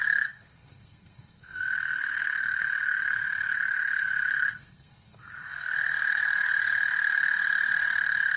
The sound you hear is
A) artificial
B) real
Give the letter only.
A